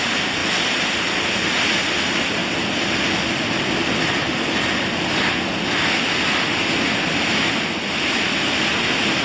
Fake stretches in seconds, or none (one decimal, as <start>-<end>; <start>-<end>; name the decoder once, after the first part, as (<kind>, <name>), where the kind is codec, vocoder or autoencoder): none